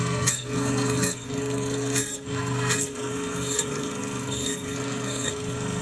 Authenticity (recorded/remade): remade